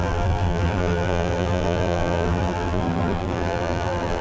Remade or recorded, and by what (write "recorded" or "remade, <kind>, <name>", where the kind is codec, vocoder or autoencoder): remade, vocoder, BigVGAN v2